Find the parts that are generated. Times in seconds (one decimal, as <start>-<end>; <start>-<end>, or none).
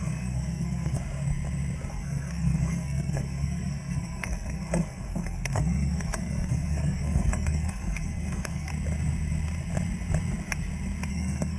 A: 0.0-1.0; 1.9-8.7; 11.1-11.6